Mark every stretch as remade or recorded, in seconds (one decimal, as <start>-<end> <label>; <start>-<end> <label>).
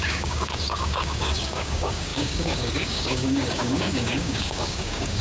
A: 0.0-5.2 remade